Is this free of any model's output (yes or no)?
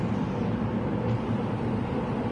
no